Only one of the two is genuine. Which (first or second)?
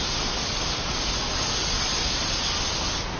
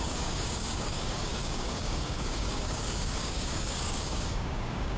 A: first